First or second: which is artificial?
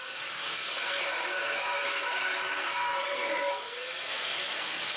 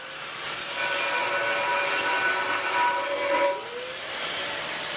first